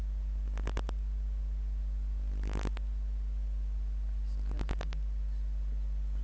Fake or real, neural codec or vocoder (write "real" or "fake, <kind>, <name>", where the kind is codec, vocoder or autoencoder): real